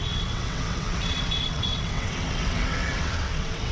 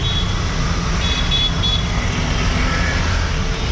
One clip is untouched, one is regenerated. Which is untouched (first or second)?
second